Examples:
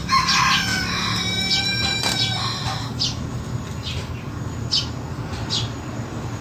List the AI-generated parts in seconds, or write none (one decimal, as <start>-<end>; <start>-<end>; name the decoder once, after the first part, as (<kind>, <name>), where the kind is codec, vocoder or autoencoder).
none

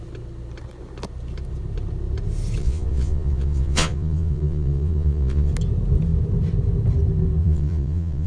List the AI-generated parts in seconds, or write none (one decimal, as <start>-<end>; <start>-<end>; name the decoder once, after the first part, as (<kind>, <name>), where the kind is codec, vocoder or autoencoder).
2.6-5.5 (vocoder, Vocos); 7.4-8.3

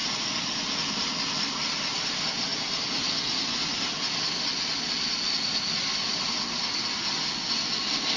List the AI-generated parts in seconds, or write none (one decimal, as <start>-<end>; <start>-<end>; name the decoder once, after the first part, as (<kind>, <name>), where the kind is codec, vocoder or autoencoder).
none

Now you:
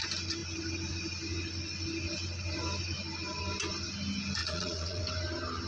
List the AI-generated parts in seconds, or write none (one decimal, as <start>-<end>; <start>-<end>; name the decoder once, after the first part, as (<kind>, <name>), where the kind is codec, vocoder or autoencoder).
4.4-5.0 (vocoder, Vocos)

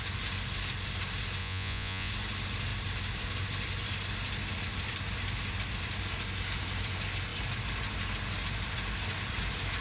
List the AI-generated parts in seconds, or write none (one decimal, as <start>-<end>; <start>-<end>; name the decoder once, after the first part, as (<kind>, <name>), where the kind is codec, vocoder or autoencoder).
1.4-2.1 (vocoder, Vocos)

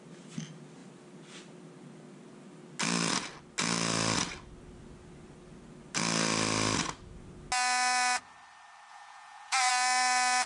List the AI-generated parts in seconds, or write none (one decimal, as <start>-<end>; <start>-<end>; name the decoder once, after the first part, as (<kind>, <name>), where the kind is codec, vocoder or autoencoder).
8.9-9.7 (vocoder, Vocos)

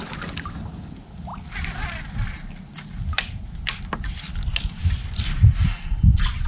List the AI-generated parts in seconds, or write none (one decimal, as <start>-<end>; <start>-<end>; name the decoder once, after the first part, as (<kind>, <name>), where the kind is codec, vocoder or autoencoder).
none